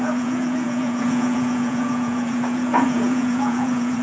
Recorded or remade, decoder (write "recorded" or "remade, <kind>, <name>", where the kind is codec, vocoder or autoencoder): remade, vocoder, Vocos